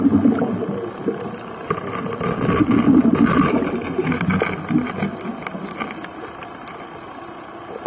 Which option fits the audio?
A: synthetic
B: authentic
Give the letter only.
B